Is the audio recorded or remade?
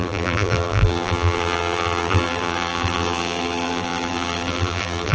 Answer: remade